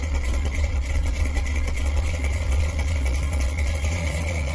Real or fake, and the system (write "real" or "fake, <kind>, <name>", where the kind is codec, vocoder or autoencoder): fake, vocoder, Vocos